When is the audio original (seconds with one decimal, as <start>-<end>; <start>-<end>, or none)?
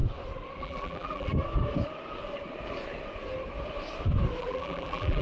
0.0-0.6; 1.3-4.4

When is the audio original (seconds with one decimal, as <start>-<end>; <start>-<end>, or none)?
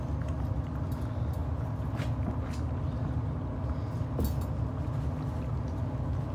0.0-1.4; 2.5-6.3